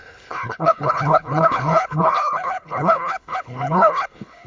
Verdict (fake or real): fake